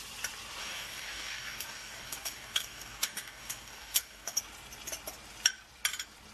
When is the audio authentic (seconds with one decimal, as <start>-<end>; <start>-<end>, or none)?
0.0-0.6; 4.4-6.3